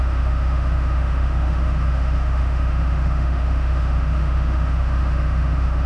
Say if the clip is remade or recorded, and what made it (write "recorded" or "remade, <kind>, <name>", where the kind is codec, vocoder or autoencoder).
remade, autoencoder, DAC-VAE